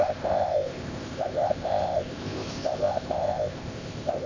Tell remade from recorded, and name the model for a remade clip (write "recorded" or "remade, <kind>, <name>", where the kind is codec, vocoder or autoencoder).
remade, codec, ZipCodec